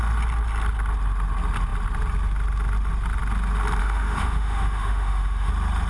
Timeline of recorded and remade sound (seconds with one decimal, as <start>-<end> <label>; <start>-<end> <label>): 0.0-3.8 recorded; 3.8-5.5 remade; 5.5-5.9 recorded